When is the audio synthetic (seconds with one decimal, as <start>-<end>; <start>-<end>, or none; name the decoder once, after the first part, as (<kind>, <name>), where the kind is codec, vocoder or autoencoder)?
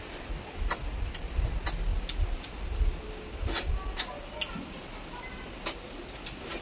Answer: none